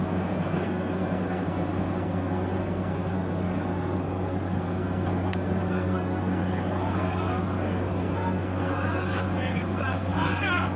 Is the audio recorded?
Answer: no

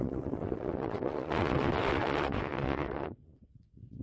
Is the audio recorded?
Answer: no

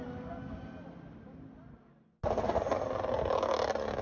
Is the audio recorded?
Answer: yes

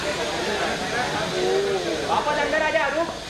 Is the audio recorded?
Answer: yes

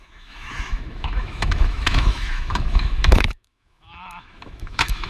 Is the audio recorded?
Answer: no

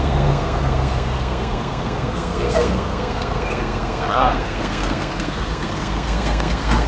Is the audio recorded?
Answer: no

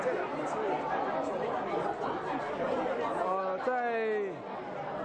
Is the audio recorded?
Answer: yes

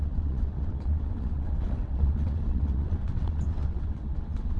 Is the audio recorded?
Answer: no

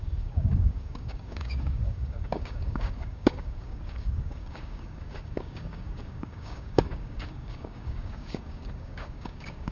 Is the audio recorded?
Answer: no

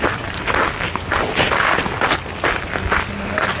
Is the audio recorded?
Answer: yes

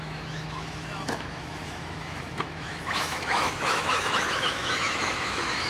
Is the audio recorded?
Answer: no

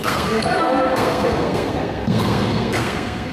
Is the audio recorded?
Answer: no